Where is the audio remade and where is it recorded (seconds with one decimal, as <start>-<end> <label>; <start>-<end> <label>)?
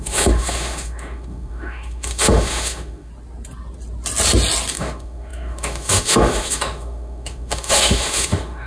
0.0-3.1 remade; 3.1-4.7 recorded; 4.7-8.7 remade